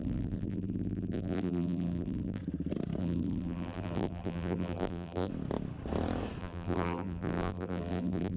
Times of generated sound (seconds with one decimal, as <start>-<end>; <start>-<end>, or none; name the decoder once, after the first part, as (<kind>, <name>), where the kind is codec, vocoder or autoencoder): 0.0-2.4 (vocoder, BigVGAN v2); 3.0-5.3; 6.4-8.4